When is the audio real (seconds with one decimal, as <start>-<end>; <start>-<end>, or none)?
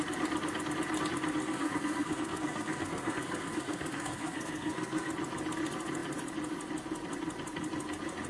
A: 0.0-1.4; 5.1-8.3